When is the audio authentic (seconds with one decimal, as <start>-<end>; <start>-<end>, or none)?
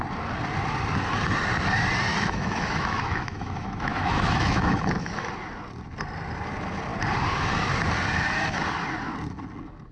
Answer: 0.0-2.1; 5.3-9.9